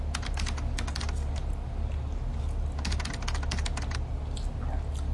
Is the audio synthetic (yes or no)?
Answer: no